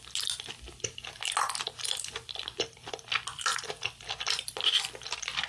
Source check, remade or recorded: recorded